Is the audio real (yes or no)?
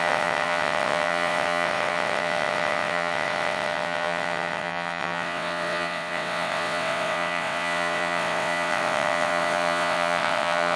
no